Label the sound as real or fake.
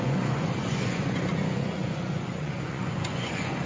fake